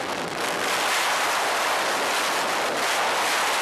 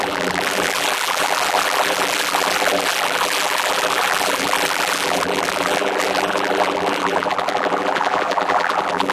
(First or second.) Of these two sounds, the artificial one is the second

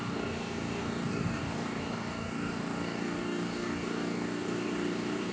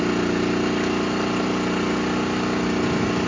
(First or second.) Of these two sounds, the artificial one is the first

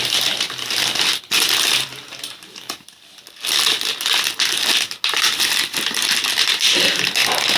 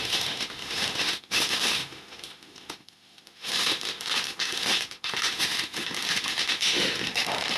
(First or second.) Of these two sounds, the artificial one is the second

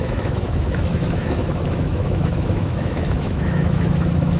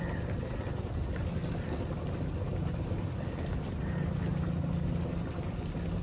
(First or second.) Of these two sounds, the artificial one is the first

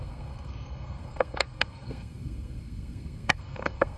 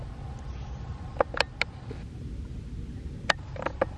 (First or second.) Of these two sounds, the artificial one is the first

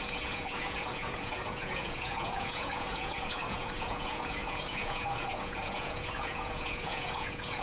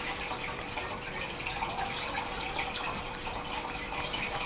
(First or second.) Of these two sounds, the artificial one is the first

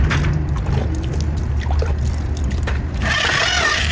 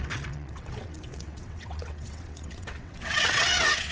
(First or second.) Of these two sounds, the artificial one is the second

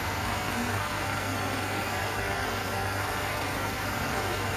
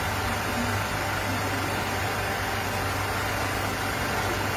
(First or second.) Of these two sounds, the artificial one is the first